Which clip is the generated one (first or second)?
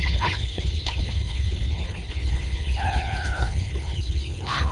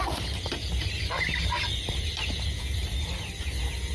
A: first